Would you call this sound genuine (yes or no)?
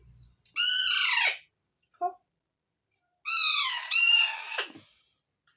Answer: yes